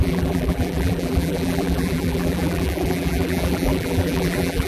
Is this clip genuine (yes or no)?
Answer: no